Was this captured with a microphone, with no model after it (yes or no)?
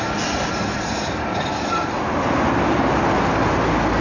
yes